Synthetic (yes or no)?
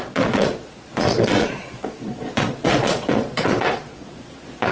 yes